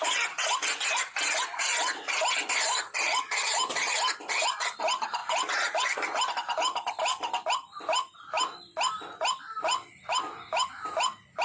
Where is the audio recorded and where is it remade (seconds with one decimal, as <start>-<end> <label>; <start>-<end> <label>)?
0.0-11.4 recorded